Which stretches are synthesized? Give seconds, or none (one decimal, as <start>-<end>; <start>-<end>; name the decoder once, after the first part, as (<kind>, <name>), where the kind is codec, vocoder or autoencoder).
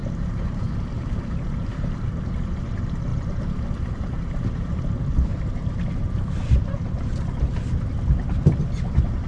0.0-2.2 (vocoder, BigVGAN v2); 3.1-4.8; 5.3-6.4